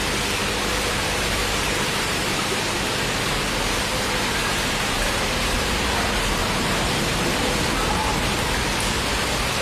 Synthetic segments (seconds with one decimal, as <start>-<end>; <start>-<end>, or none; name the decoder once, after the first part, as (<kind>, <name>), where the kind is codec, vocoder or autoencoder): 0.4-2.6 (vocoder, BigVGAN v2); 4.4-5.8; 6.4-7.6